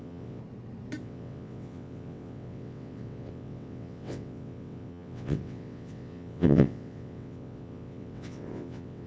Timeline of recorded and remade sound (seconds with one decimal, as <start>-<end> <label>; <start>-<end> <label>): 0.0-0.4 remade; 0.4-1.0 recorded; 1.0-9.1 remade